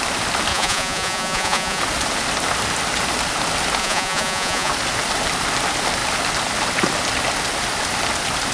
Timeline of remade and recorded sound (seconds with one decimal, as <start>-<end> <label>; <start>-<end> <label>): 0.0-0.5 recorded; 0.5-1.8 remade; 1.8-3.8 recorded; 3.8-4.7 remade; 4.7-8.5 recorded